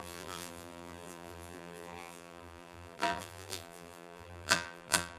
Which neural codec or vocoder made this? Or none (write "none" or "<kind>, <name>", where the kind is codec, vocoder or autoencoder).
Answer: vocoder, BigVGAN v2